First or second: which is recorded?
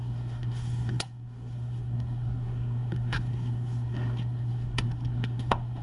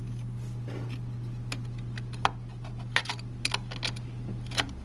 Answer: second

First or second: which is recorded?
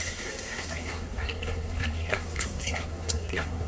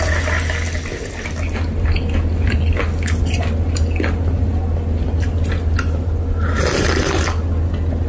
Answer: second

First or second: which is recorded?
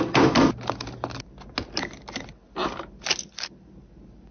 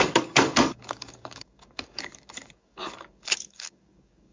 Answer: first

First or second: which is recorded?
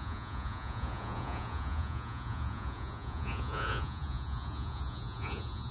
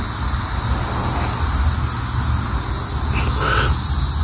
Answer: second